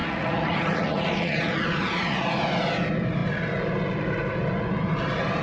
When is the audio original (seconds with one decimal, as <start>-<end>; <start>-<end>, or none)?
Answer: 2.3-5.4